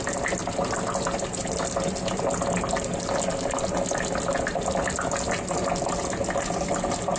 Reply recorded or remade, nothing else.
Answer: recorded